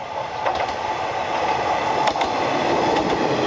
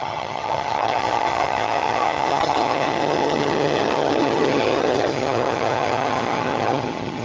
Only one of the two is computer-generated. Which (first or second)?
second